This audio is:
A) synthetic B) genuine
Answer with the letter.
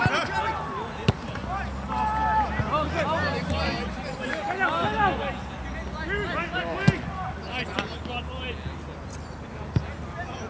B